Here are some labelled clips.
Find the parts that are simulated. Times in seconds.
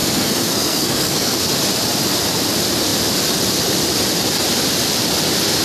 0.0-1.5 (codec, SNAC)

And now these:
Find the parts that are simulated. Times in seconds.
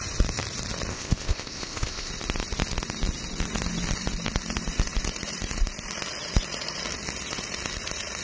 0.9-2.1 (codec, ZipCodec)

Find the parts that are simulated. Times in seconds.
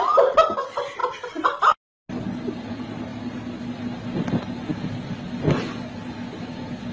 none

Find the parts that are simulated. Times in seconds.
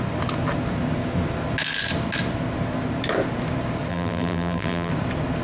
3.9-4.9 (vocoder, BigVGAN v2)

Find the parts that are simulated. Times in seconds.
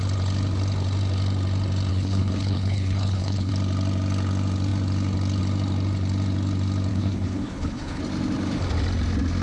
1.9-3.5 (codec, HILCodec); 6.9-8.0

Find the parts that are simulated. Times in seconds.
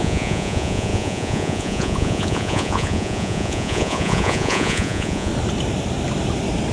0.0-5.3 (vocoder, Vocos)